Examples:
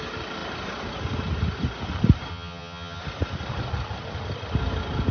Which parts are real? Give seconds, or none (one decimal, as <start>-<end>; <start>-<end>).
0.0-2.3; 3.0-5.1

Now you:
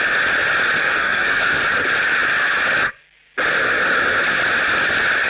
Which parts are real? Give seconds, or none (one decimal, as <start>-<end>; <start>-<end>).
0.0-0.8; 1.6-5.3

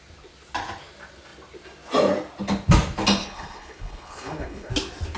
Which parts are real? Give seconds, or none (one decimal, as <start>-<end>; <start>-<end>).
0.0-3.2; 4.7-5.2

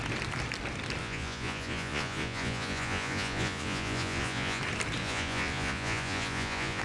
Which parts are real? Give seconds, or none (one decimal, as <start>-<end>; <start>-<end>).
0.0-1.0; 4.6-5.0